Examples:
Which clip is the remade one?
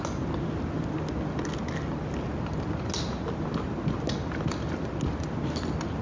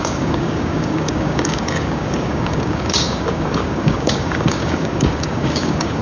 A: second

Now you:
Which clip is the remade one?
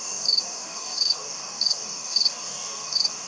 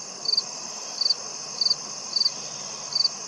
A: first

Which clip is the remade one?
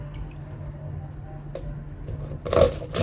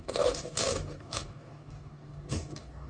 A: second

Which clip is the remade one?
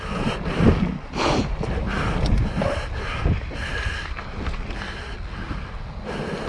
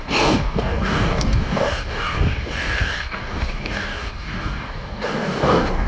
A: second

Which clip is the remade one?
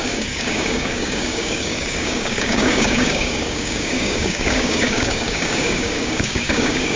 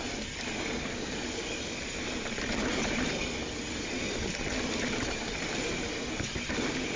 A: first